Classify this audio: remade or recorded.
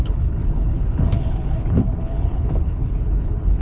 remade